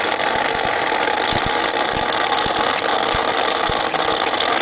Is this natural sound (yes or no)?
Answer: yes